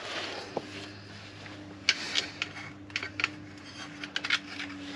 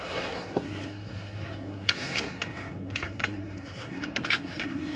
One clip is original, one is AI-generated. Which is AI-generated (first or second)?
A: second